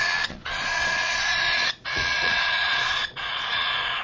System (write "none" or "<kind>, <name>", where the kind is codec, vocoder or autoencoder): vocoder, Vocos